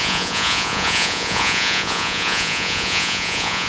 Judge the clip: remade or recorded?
remade